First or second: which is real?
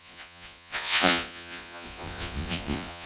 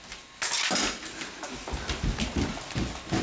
second